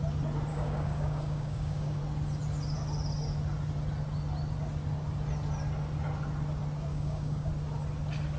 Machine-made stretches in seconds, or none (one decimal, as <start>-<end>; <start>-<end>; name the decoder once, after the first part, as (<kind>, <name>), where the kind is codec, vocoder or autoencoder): 0.5-2.0 (codec, DAC); 6.9-7.5